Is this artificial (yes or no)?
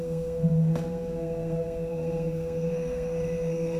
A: yes